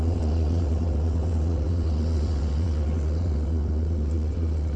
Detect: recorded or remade remade